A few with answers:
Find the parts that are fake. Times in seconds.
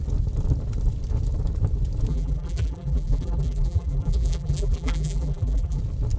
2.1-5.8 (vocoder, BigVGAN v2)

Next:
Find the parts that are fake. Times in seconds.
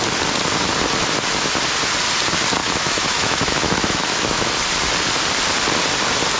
2.6-4.5 (autoencoder, DAC-VAE)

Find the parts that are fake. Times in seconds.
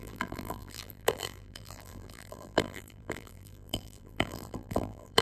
0.0-5.2 (vocoder, BigVGAN v2)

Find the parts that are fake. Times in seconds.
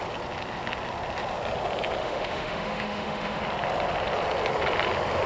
2.0-3.4 (autoencoder, DAC-VAE)